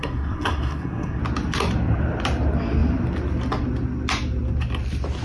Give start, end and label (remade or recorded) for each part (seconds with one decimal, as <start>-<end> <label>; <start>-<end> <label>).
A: 0.0-1.2 remade; 1.2-5.2 recorded